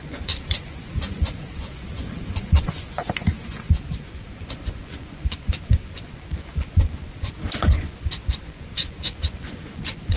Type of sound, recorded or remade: remade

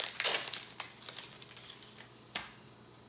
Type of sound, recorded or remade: recorded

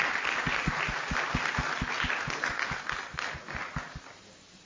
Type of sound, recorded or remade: recorded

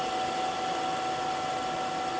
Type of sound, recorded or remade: recorded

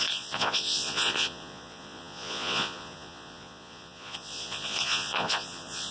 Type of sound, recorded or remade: remade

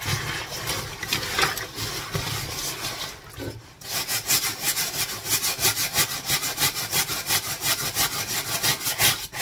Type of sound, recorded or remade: recorded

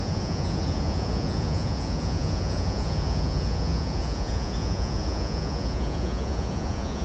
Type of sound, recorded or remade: remade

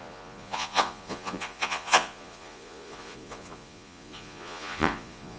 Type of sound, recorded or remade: remade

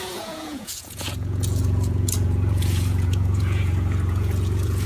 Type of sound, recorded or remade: remade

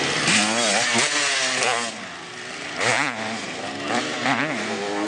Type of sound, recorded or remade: recorded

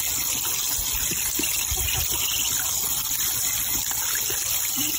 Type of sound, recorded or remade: recorded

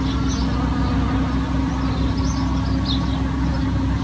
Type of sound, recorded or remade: recorded